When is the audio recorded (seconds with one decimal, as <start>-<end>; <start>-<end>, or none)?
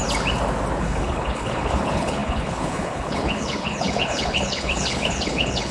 0.0-0.8